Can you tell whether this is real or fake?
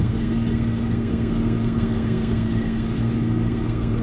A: fake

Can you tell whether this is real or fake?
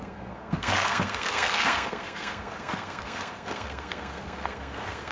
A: fake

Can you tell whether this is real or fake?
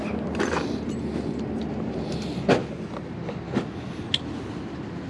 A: real